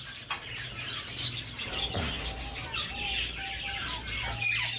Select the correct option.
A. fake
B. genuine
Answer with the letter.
B